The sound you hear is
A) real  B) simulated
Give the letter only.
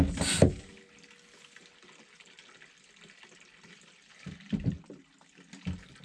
A